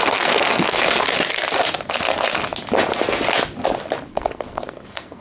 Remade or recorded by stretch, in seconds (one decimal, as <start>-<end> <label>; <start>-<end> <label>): 0.0-1.0 remade; 1.0-4.1 recorded; 4.1-5.2 remade